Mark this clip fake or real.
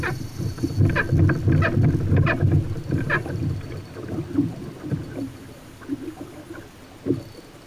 real